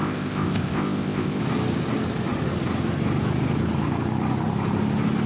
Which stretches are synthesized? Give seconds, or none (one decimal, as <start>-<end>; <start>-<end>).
0.0-1.4